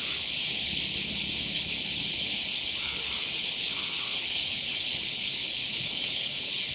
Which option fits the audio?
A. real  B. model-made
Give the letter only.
B